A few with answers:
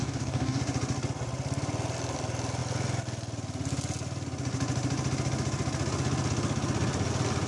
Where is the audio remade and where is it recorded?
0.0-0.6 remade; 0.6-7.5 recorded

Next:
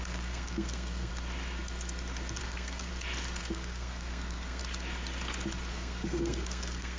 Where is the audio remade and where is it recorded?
0.0-1.1 remade; 1.1-2.4 recorded; 2.4-2.9 remade; 2.9-3.4 recorded; 3.4-4.6 remade; 4.6-5.7 recorded; 5.7-7.0 remade